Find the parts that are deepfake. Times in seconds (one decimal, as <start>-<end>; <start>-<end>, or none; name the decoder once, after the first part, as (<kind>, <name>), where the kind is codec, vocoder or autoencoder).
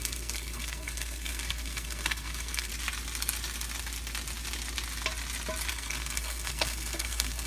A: 0.0-2.7 (codec, SNAC); 5.7-7.5